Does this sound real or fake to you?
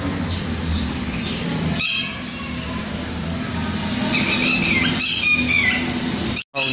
real